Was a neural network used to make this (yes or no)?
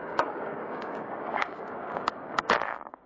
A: yes